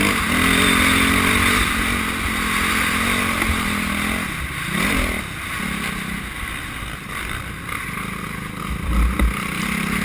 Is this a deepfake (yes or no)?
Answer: no